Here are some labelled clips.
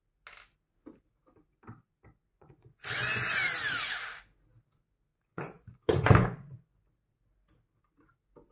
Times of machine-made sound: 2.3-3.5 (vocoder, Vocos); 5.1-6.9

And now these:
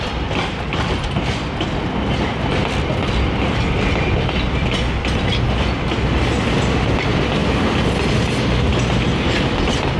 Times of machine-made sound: none

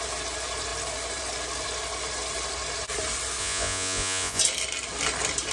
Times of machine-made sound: 3.4-4.4 (vocoder, Vocos)

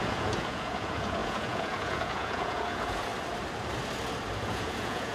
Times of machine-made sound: 0.0-3.1 (vocoder, Vocos); 4.4-5.1

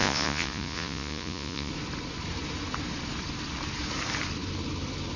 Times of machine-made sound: 0.0-1.7 (vocoder, Vocos)

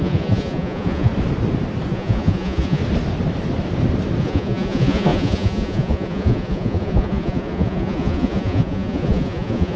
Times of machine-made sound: 0.0-1.1 (vocoder, Vocos); 1.9-2.8; 4.2-9.8

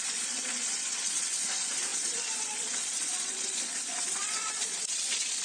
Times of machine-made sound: 0.0-5.4 (vocoder, Vocos)

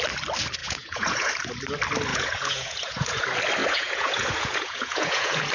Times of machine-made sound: 0.6-1.3 (vocoder, Vocos); 2.1-3.2; 3.6-5.5